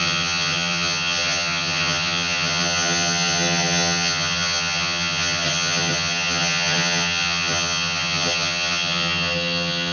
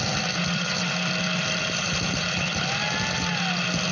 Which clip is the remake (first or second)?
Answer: first